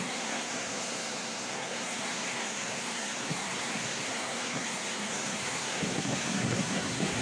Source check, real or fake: fake